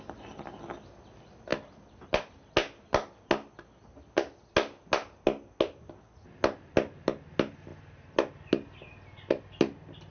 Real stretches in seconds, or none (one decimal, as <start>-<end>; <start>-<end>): 0.0-10.1